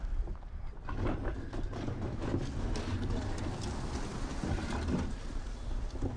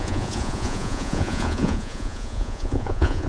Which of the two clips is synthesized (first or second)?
second